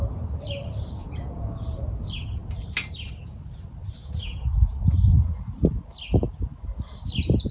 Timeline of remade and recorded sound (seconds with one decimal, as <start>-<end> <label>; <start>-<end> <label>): 0.0-1.0 recorded; 1.0-1.5 remade; 1.5-4.0 recorded; 4.0-4.6 remade; 4.6-7.5 recorded